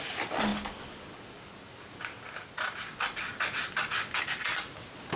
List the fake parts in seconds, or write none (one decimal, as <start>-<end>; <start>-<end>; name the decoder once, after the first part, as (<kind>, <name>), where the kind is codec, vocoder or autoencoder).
none